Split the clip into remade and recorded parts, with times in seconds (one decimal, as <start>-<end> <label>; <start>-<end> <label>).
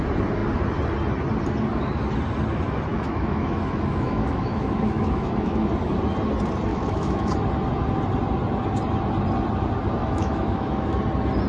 0.0-2.9 recorded; 2.9-5.7 remade; 5.7-6.7 recorded; 6.7-7.3 remade; 7.3-10.0 recorded; 10.0-11.0 remade; 11.0-11.5 recorded